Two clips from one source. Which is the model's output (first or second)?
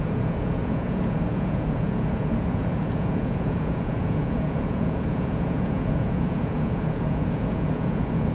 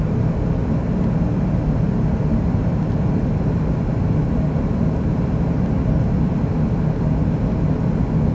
first